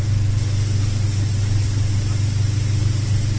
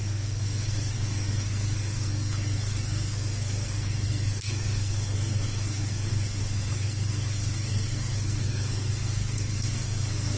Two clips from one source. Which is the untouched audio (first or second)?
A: first